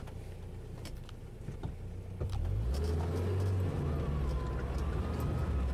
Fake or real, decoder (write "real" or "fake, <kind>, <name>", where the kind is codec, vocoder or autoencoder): real